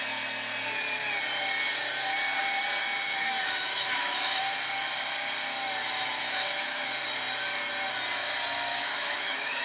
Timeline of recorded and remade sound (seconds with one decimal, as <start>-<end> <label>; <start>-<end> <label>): 0.0-2.8 recorded; 2.8-4.4 remade; 4.4-5.8 recorded; 5.8-6.9 remade; 6.9-8.7 recorded; 8.7-9.6 remade